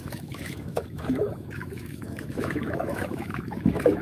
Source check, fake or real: fake